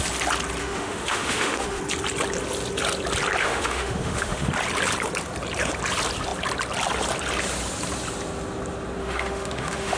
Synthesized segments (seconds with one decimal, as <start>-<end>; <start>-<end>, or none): 0.6-1.8; 3.4-4.5; 9.0-10.0